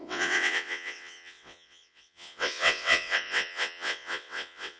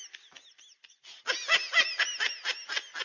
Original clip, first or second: second